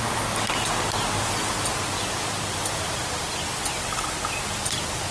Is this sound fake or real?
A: real